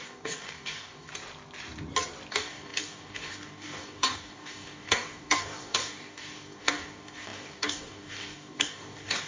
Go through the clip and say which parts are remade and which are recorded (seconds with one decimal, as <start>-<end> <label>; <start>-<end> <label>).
0.0-1.1 remade; 1.1-2.3 recorded; 2.3-9.3 remade